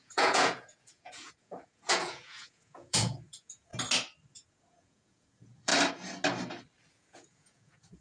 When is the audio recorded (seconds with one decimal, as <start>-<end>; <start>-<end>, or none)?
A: 3.7-4.3; 5.7-6.9